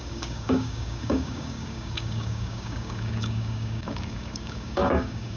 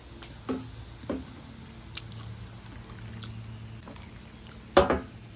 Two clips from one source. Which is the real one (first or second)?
second